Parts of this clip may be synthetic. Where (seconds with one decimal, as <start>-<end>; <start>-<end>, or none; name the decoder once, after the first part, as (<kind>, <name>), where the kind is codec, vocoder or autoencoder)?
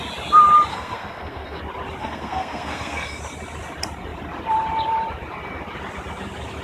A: 0.7-1.6 (codec, SNAC); 2.0-3.2